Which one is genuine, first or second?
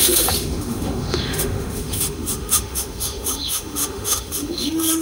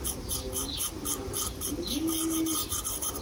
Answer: second